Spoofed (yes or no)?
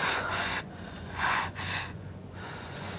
yes